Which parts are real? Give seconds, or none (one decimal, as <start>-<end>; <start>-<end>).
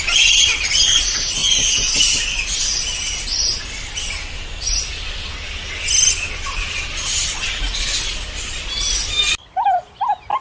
0.0-10.4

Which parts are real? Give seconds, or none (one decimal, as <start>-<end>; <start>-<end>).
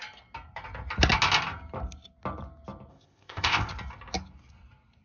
0.0-2.9; 3.7-5.0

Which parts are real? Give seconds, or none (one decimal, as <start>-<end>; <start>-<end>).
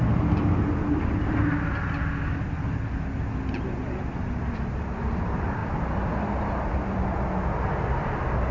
0.0-8.5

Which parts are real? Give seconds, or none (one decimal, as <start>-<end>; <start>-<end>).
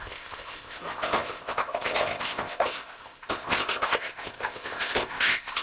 none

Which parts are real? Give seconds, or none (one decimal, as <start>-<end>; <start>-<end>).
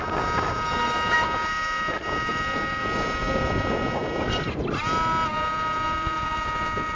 0.0-7.0